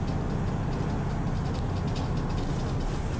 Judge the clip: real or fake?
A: real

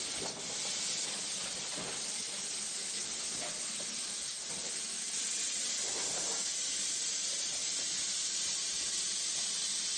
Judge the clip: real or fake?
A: real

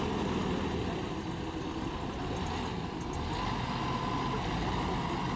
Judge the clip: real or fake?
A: real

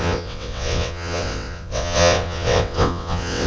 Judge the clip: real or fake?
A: fake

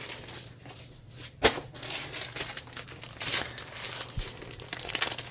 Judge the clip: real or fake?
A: real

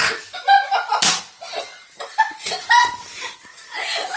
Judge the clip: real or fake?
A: real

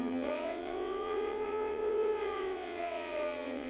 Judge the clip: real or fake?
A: fake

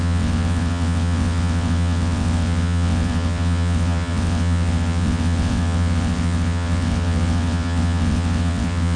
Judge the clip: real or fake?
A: fake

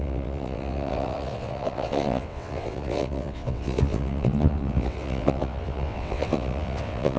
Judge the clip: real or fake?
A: fake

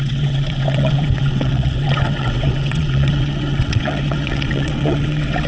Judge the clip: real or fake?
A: fake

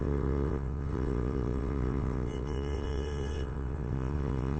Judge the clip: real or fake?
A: fake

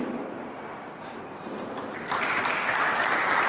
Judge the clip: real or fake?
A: real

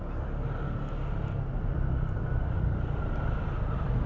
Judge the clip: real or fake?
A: real